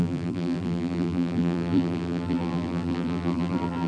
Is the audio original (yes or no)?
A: no